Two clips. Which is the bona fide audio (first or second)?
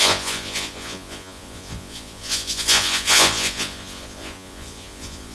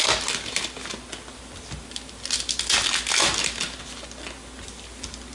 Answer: second